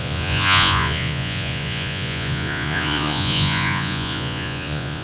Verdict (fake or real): fake